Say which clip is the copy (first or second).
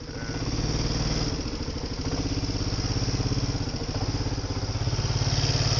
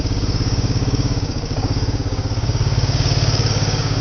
second